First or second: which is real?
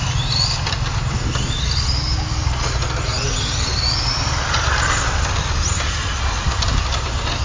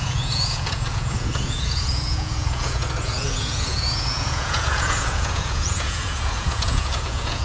first